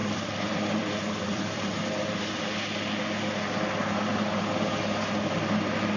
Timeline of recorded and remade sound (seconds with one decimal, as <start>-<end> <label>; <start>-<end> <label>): 0.0-2.2 remade; 2.2-6.0 recorded

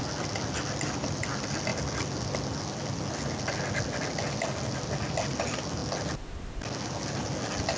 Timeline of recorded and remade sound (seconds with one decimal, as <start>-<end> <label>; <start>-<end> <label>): 0.0-7.8 recorded